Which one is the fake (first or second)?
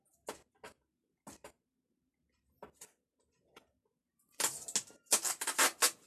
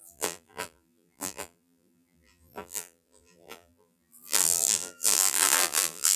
second